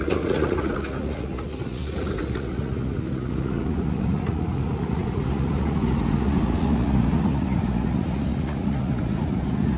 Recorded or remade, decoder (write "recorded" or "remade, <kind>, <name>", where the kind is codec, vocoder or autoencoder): remade, vocoder, Vocos